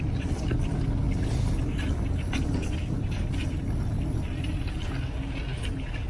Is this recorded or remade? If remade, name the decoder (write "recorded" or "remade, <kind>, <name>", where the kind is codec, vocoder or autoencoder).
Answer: recorded